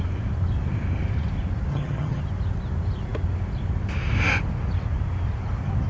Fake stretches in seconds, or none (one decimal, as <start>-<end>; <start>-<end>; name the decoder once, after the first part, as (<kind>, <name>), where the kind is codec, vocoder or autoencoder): 1.7-2.2 (vocoder, HiFi-GAN)

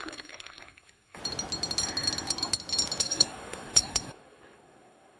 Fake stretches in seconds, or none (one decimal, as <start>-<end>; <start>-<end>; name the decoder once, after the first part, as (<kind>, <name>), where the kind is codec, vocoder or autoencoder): 0.0-1.2 (codec, SNAC); 3.0-5.2